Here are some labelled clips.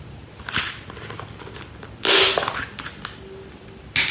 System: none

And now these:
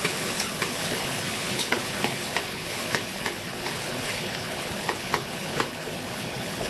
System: codec, HILCodec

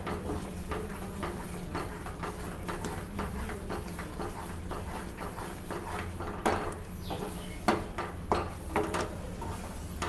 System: none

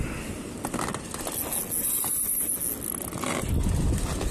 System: none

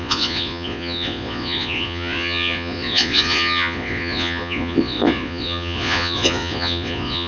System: vocoder, Vocos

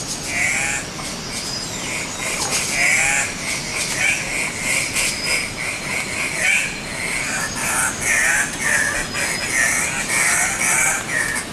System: none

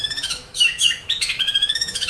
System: autoencoder, DAC-VAE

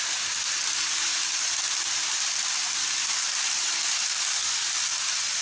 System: none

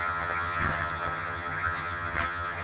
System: vocoder, HiFi-GAN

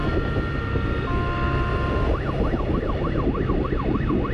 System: none